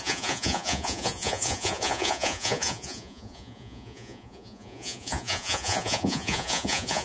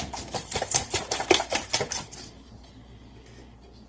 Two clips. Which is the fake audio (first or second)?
first